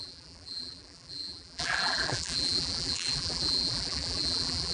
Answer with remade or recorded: remade